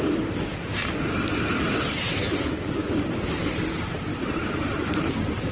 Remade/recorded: remade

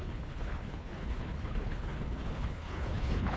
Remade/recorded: remade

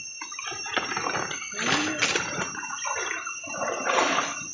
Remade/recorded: recorded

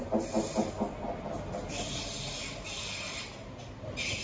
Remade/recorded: recorded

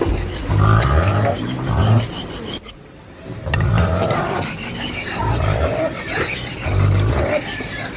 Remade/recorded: recorded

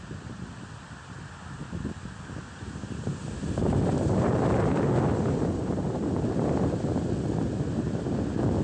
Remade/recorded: recorded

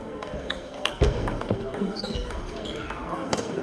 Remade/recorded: remade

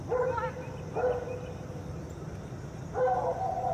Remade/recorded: recorded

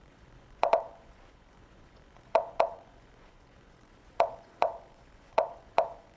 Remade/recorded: remade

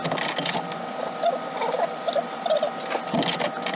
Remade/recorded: recorded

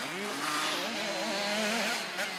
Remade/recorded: recorded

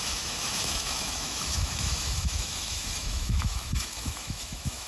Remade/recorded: remade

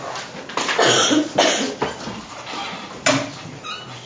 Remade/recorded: recorded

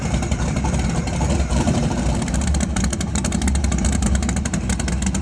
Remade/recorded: remade